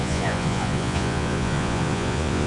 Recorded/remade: remade